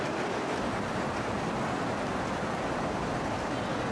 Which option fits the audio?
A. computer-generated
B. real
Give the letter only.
B